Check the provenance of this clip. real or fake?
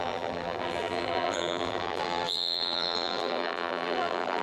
fake